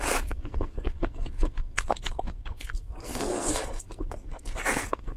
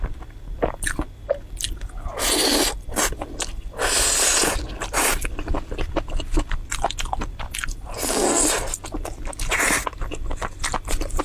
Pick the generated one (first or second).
first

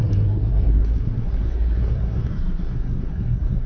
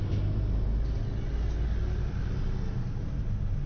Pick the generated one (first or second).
first